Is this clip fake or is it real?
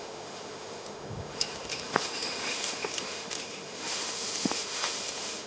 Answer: fake